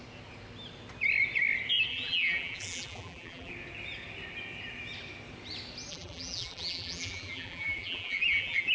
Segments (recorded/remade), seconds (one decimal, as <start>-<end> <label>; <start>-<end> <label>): 0.0-1.9 recorded; 1.9-3.5 remade; 3.5-5.9 recorded; 5.9-8.7 remade

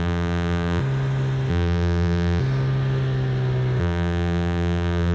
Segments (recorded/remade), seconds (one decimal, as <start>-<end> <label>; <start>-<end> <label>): 0.0-0.8 remade; 0.8-1.5 recorded; 1.5-2.4 remade; 2.4-3.8 recorded; 3.8-5.1 remade

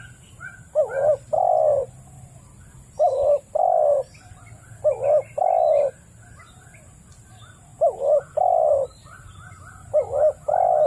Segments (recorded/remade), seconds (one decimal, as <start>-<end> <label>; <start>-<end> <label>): 0.0-5.2 remade; 5.2-7.0 recorded; 7.0-7.7 remade; 7.7-8.7 recorded; 8.7-10.9 remade

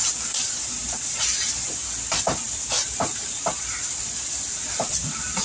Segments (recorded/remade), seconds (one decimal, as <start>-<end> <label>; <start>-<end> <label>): 0.0-5.4 remade